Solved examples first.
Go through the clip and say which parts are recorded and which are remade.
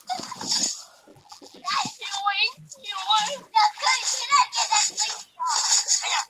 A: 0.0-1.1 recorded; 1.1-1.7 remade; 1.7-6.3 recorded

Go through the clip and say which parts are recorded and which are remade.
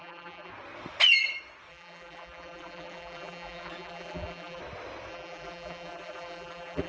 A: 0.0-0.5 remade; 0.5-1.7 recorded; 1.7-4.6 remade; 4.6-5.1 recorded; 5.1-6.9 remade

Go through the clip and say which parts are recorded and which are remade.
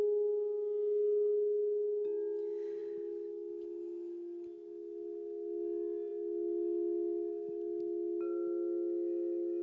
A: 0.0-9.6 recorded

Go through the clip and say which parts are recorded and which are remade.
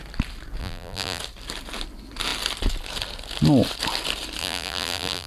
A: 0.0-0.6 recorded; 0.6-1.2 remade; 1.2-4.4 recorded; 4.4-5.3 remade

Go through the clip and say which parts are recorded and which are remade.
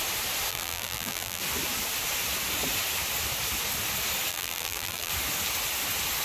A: 0.0-0.5 recorded; 0.5-1.4 remade; 1.4-4.3 recorded; 4.3-5.1 remade; 5.1-6.2 recorded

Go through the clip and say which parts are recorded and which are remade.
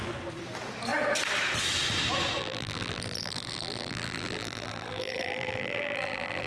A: 0.0-2.4 recorded; 2.4-6.5 remade